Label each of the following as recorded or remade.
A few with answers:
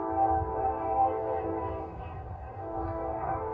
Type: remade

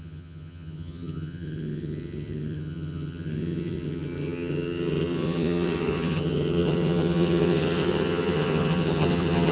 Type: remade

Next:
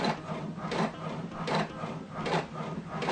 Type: remade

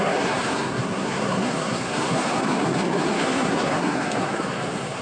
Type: remade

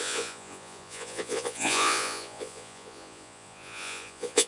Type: remade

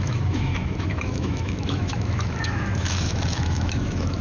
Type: remade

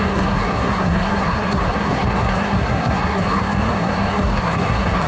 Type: remade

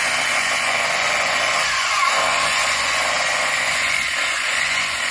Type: remade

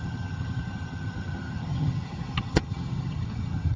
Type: remade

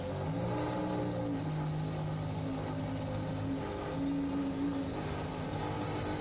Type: recorded